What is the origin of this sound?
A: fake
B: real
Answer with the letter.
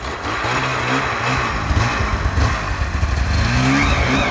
B